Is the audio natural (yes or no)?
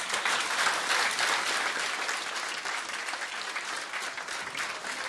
yes